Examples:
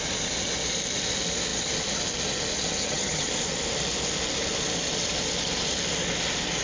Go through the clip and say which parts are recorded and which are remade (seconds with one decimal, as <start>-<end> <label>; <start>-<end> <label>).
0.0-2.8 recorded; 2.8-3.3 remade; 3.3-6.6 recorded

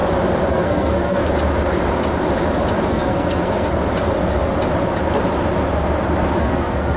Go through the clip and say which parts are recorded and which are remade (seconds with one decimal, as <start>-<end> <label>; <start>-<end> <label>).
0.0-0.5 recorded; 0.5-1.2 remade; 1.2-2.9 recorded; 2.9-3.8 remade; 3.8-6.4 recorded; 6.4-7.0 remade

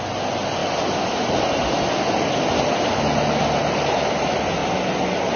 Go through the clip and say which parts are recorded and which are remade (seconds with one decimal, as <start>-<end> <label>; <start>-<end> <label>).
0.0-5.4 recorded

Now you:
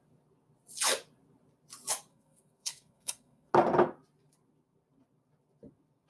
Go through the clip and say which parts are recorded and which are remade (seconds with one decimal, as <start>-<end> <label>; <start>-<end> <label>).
0.0-2.1 recorded; 2.1-3.5 remade; 3.5-6.1 recorded